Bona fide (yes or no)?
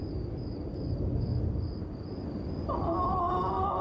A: yes